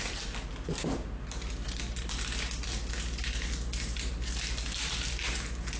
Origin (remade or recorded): recorded